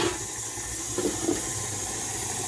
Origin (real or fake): real